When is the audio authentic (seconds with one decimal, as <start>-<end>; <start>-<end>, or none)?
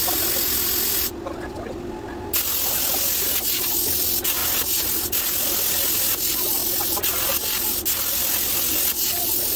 0.0-9.6